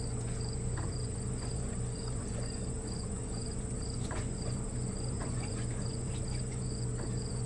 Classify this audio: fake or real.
fake